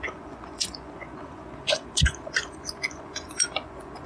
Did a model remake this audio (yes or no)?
yes